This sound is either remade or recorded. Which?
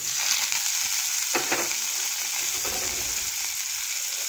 recorded